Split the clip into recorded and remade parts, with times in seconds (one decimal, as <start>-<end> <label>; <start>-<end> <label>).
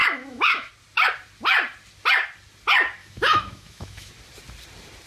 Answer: 0.0-0.7 remade; 0.7-3.0 recorded; 3.0-4.1 remade; 4.1-5.1 recorded